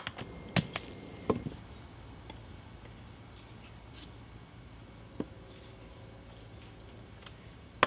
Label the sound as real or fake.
real